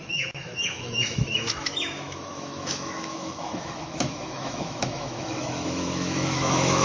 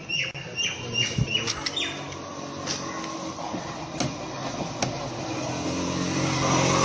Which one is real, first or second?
second